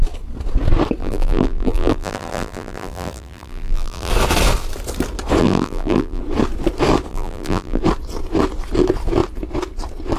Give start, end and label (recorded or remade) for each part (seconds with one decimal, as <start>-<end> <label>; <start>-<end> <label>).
0.0-1.0 recorded; 1.0-4.1 remade; 4.1-5.4 recorded; 5.4-6.2 remade; 6.2-7.1 recorded; 7.1-7.8 remade; 7.8-10.2 recorded